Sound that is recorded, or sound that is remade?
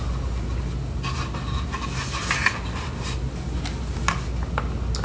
recorded